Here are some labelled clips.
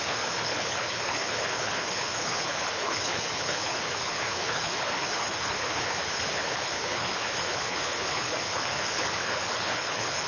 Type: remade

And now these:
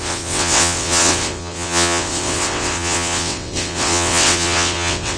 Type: remade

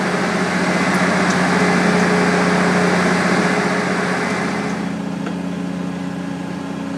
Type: recorded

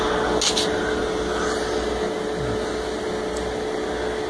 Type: recorded